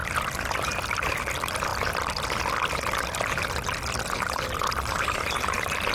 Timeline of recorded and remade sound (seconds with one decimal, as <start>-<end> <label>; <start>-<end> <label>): 0.0-1.1 recorded; 1.1-1.7 remade; 1.7-3.4 recorded; 3.4-5.9 remade